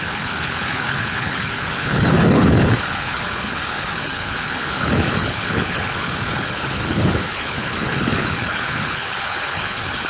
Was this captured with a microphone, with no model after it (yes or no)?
no